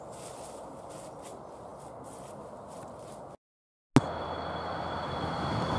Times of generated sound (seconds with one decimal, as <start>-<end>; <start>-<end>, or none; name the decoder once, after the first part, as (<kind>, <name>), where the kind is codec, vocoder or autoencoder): none